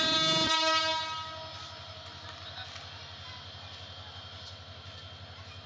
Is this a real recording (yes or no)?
yes